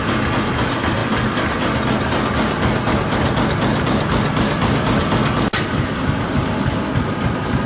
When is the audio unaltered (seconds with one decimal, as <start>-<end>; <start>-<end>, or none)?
0.0-7.7

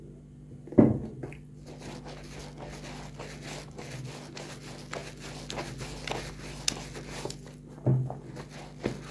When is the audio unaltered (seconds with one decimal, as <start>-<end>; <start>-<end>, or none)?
0.0-9.1